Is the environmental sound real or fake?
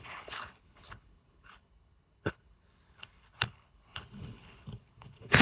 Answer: fake